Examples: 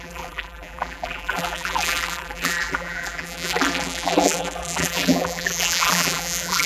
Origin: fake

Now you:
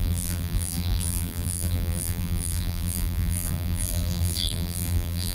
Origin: fake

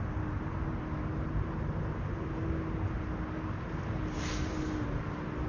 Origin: real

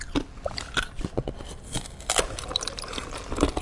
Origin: fake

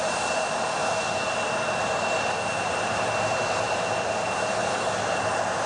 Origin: fake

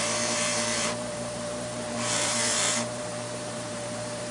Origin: fake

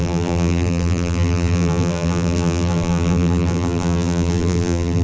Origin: fake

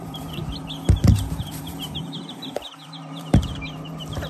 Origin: fake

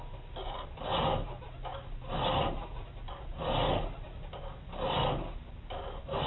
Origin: real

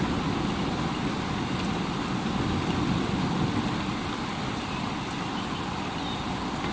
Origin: real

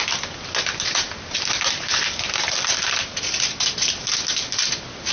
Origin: real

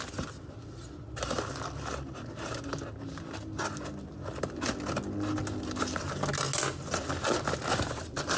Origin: real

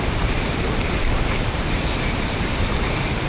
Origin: fake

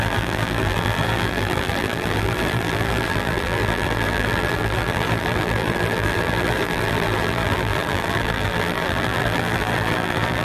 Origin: fake